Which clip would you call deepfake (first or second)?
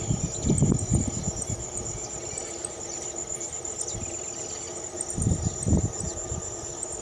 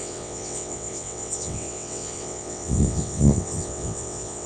second